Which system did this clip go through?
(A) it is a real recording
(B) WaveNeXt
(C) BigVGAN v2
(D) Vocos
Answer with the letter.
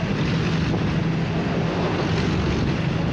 A